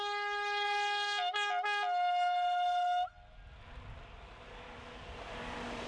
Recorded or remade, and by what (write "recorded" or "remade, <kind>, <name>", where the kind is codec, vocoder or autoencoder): recorded